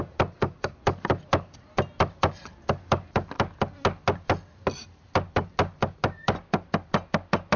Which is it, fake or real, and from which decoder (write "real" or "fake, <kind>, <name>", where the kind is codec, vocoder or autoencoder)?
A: real